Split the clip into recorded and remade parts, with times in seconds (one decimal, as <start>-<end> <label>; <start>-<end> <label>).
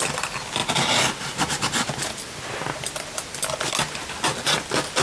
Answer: 0.0-5.0 recorded